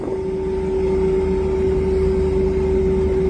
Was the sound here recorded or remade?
recorded